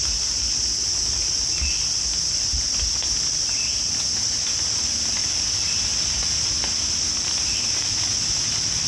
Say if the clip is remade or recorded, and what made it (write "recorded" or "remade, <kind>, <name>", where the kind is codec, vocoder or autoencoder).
recorded